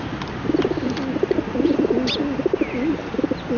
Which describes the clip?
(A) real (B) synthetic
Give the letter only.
A